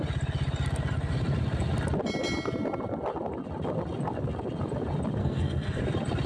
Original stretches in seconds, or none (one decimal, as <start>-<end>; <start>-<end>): 0.0-5.2; 5.8-6.3